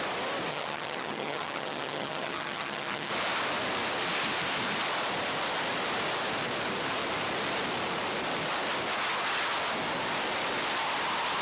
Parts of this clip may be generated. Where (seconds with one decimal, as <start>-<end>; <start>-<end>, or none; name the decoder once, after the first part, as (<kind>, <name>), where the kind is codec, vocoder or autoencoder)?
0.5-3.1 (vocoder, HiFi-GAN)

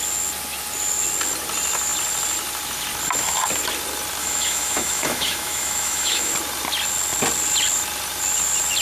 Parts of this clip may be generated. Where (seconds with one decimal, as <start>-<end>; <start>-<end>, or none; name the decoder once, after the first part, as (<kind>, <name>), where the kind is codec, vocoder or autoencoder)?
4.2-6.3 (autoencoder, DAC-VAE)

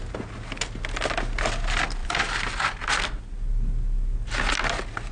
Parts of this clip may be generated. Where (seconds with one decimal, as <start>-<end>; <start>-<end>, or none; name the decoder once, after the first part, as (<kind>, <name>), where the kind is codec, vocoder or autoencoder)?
2.0-3.2 (vocoder, BigVGAN v2)

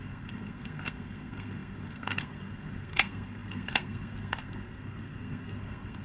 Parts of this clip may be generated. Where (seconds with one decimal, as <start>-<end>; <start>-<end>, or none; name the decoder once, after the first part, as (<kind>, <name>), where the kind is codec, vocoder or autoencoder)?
0.0-6.0 (codec, SNAC)

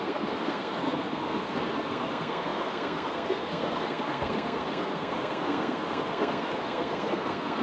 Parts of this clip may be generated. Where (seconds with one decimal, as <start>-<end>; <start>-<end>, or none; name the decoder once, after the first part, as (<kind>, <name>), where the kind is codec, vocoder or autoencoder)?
0.0-7.6 (codec, SNAC)